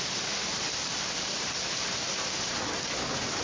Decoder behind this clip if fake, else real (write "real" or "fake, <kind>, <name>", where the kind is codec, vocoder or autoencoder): real